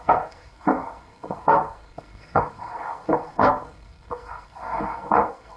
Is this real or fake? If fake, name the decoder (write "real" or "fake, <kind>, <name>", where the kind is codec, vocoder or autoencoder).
fake, codec, SNAC